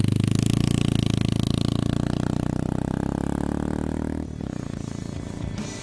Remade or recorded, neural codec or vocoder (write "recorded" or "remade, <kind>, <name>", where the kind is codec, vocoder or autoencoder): recorded